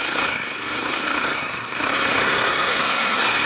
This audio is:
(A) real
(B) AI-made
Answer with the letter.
B